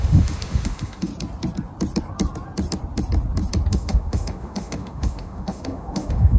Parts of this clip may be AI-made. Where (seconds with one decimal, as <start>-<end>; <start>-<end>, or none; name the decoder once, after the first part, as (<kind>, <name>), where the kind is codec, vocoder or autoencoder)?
0.0-1.1 (autoencoder, DAC-VAE); 3.7-6.4